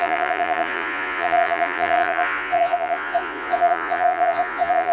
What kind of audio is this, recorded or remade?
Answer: remade